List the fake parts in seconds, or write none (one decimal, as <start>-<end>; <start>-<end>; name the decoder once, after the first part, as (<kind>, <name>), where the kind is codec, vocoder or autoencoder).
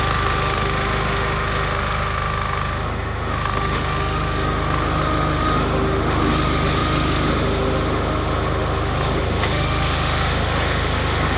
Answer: 0.0-11.4 (autoencoder, DAC-VAE)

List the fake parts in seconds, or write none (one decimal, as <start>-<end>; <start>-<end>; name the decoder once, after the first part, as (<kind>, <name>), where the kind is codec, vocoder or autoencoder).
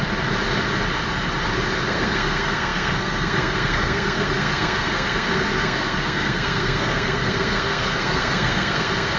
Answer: 1.9-9.2 (codec, SNAC)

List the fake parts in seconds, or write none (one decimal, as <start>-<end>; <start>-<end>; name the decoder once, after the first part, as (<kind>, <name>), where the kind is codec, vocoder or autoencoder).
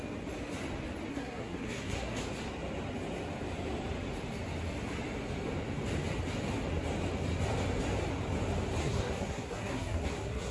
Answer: 1.1-2.2 (codec, SNAC); 8.8-10.5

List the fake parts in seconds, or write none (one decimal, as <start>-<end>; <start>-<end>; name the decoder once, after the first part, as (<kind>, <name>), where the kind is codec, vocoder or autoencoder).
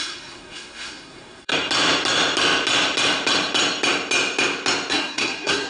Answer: 0.0-1.5 (codec, SNAC); 4.9-5.7